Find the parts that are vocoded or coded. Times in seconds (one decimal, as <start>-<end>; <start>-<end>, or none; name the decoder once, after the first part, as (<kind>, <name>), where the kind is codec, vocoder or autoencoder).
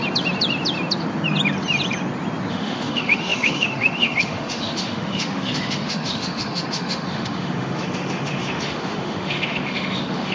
2.5-10.3 (autoencoder, DAC-VAE)